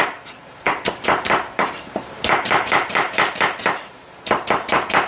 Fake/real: fake